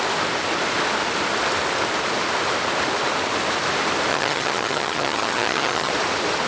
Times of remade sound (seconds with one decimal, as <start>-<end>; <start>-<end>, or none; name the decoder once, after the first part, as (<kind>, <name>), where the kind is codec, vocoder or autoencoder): 4.1-5.9 (vocoder, HiFi-GAN)